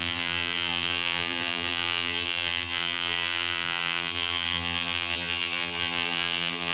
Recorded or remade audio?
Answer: remade